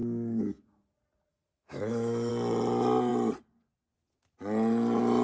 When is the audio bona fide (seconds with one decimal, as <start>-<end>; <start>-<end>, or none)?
0.9-1.3; 2.3-5.2